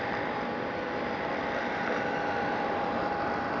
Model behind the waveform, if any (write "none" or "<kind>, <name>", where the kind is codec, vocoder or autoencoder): vocoder, BigVGAN v2